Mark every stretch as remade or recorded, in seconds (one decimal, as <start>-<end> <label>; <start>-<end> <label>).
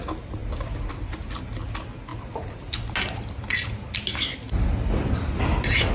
0.0-5.9 recorded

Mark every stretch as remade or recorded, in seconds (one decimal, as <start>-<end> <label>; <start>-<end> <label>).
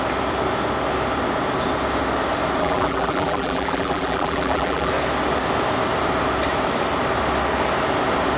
0.0-2.6 recorded; 2.6-4.9 remade; 4.9-8.4 recorded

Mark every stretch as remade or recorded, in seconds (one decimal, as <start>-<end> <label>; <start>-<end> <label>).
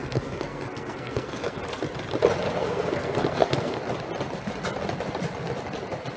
0.0-1.6 remade; 1.6-2.6 recorded; 2.6-3.8 remade; 3.8-6.2 recorded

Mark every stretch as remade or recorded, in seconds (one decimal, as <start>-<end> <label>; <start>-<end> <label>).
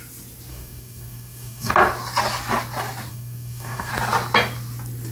0.0-0.5 recorded; 0.5-1.7 remade; 1.7-3.1 recorded; 3.1-3.9 remade; 3.9-5.1 recorded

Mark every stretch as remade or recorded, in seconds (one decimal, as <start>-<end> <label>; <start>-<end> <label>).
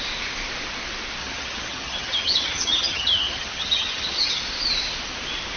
0.0-1.2 recorded; 1.2-4.4 remade; 4.4-5.6 recorded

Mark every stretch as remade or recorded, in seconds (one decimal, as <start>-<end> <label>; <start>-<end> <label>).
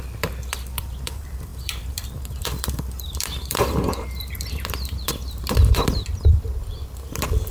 0.0-6.5 remade; 6.5-7.1 recorded; 7.1-7.5 remade